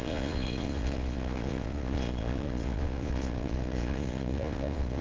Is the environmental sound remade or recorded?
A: remade